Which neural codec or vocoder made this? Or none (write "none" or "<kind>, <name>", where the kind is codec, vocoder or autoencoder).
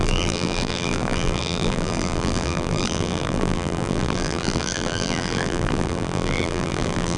vocoder, BigVGAN v2